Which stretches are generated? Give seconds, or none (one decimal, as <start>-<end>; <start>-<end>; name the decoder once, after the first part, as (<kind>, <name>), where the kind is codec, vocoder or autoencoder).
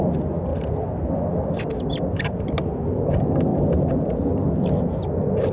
none